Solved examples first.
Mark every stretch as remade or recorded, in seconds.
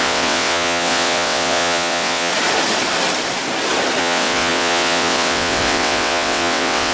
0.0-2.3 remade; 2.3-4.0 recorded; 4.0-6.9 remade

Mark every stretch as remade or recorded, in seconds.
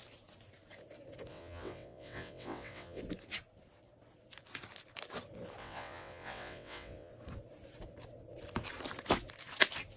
0.0-1.3 recorded; 1.3-3.0 remade; 3.0-5.6 recorded; 5.6-7.1 remade; 7.1-10.0 recorded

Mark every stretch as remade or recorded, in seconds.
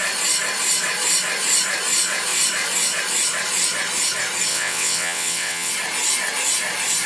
0.0-4.5 recorded; 4.5-5.7 remade; 5.7-7.1 recorded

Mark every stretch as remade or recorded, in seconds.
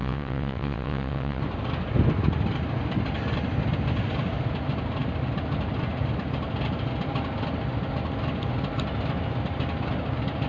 0.0-1.4 remade; 1.4-10.5 recorded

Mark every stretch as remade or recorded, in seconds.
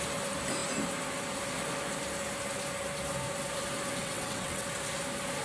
0.0-4.0 recorded; 4.0-4.7 remade; 4.7-5.4 recorded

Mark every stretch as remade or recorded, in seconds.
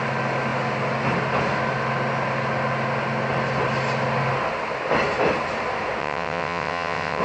0.0-6.0 recorded; 6.0-7.2 remade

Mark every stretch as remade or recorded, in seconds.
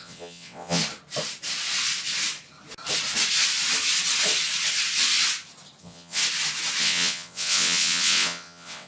0.0-0.8 remade; 0.8-5.8 recorded; 5.8-6.2 remade; 6.2-6.8 recorded; 6.8-8.9 remade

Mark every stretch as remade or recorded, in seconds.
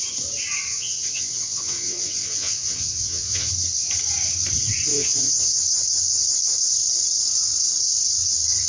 0.0-0.7 recorded; 0.7-3.5 remade; 3.5-4.9 recorded; 4.9-5.6 remade; 5.6-8.7 recorded